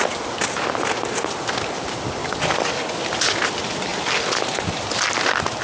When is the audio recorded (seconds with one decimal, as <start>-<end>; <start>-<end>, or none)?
0.0-2.2; 3.0-5.6